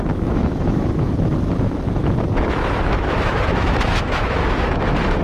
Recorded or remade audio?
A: remade